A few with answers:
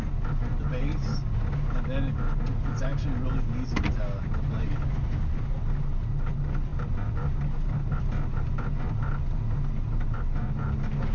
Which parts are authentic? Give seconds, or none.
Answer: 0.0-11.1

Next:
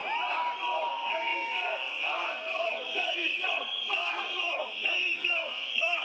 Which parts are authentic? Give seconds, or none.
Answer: 0.0-0.9

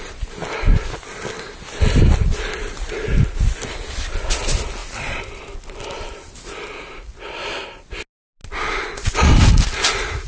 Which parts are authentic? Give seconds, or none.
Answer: 0.0-10.3